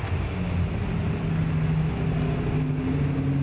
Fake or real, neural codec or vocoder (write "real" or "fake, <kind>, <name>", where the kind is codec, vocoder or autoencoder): real